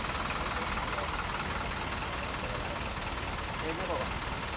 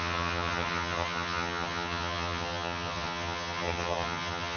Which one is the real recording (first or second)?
first